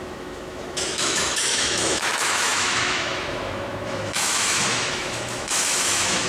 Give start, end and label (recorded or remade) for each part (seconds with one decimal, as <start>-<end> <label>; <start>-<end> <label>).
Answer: 0.0-6.3 remade